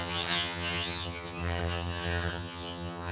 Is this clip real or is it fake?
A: fake